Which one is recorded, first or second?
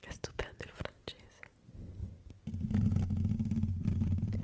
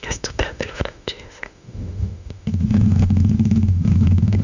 first